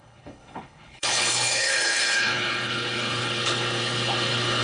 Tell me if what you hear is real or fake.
fake